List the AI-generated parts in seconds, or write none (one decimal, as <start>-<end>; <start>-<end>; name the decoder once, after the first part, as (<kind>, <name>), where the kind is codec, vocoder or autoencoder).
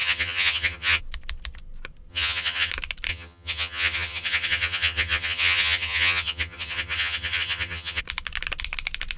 0.0-1.0 (vocoder, HiFi-GAN); 2.1-2.7; 3.1-8.0